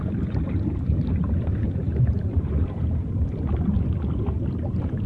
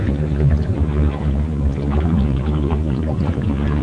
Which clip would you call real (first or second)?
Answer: first